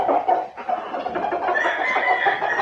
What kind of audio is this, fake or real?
real